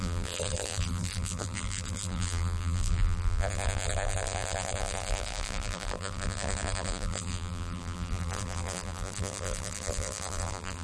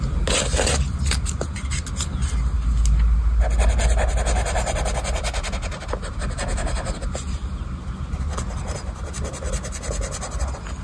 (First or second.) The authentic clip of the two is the second